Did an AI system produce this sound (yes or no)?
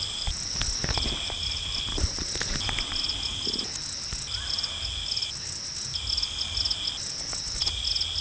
no